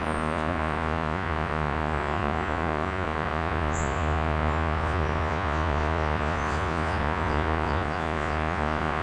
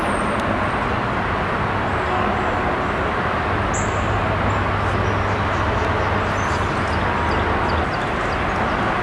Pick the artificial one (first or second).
first